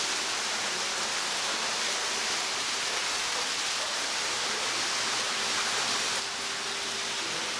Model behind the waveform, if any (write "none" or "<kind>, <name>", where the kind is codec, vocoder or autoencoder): none